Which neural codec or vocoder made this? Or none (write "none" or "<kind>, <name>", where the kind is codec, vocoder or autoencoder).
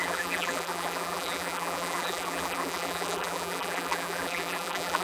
vocoder, BigVGAN v2